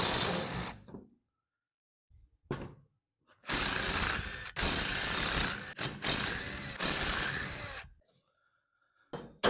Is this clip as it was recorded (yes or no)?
yes